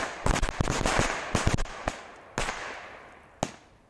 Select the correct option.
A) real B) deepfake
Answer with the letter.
A